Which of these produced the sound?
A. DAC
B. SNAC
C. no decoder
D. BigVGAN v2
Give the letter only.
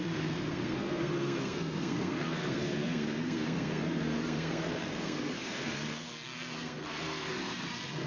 B